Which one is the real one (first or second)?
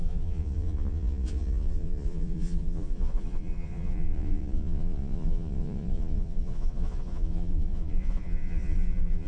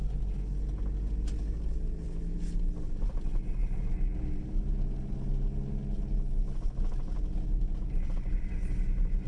second